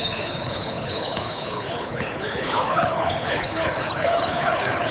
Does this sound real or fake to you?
fake